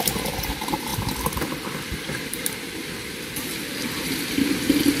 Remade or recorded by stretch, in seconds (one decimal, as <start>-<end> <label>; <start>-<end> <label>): 0.0-5.0 remade